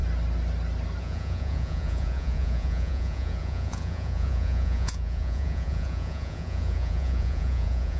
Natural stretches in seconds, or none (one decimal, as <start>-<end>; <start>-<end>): 0.0-1.0